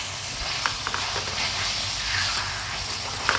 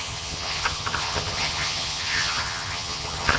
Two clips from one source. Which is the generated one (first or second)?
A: second